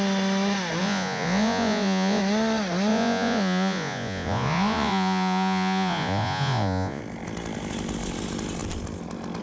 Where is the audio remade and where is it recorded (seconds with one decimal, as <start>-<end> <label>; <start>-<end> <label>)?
0.0-0.8 recorded; 0.8-2.2 remade; 2.2-2.9 recorded; 2.9-7.0 remade; 7.0-9.4 recorded